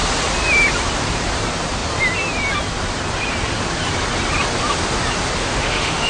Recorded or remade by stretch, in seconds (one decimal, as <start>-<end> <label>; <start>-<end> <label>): 0.0-5.4 recorded; 5.4-6.1 remade